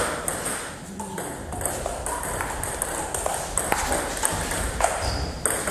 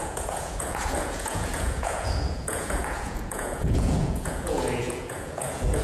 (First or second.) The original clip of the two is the first